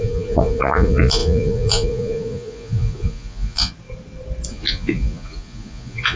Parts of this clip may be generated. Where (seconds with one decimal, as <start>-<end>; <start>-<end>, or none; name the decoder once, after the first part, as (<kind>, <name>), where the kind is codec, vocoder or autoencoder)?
0.0-3.7 (vocoder, Vocos); 4.5-6.2

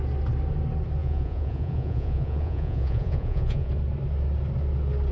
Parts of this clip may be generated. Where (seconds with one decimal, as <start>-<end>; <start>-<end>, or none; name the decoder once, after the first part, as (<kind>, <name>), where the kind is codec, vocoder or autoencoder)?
1.0-3.7 (vocoder, Vocos)

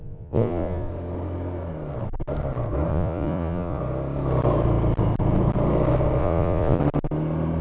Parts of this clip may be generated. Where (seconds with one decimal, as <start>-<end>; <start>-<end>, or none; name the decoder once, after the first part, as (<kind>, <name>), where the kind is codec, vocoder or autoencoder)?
0.0-0.9 (vocoder, Vocos); 2.9-3.8; 6.2-6.8

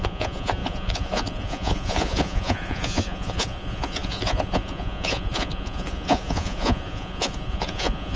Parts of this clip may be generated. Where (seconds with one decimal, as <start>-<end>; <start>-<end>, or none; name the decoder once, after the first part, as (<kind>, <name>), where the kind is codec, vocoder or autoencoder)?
0.0-8.2 (vocoder, Vocos)

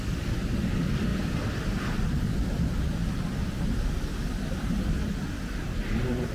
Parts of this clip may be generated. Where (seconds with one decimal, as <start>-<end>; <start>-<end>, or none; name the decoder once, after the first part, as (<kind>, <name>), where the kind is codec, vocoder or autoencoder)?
none

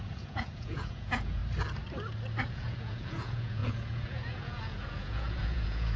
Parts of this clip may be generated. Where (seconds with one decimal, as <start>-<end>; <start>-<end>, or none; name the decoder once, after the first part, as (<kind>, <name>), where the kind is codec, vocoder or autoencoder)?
0.0-1.4 (vocoder, Vocos); 2.5-6.0

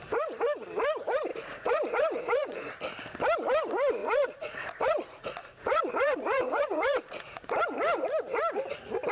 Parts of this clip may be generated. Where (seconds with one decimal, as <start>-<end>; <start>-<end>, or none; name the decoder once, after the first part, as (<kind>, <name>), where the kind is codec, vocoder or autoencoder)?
1.3-2.7 (vocoder, Vocos); 4.0-7.6

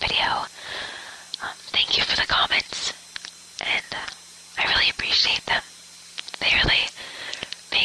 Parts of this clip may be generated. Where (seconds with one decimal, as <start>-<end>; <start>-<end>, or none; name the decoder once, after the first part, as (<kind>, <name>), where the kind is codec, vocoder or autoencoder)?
none